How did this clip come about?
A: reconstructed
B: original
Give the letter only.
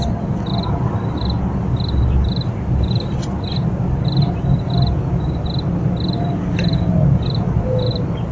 B